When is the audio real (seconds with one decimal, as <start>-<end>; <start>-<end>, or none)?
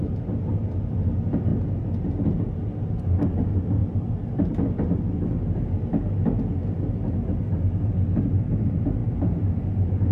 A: 0.0-9.0; 9.5-10.1